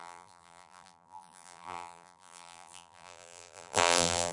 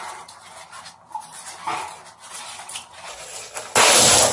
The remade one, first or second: first